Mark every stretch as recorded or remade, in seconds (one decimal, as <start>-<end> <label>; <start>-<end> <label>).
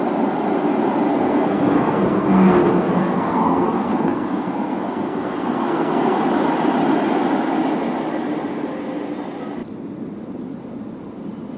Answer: 0.0-1.1 recorded; 1.1-6.2 remade; 6.2-11.6 recorded